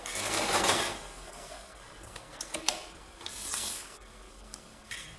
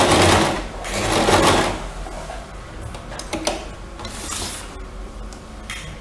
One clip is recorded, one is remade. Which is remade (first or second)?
first